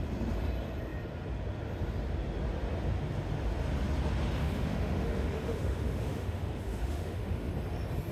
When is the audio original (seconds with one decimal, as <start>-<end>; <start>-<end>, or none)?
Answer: 0.0-4.4; 7.5-8.1